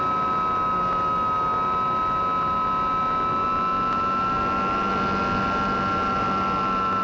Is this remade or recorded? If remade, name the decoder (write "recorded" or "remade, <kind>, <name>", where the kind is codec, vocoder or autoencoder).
recorded